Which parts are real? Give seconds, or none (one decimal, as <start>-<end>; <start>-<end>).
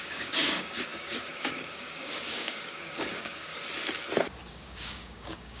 3.5-4.5